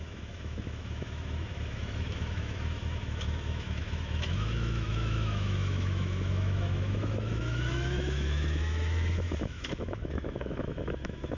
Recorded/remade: remade